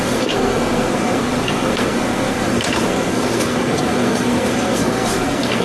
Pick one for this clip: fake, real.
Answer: fake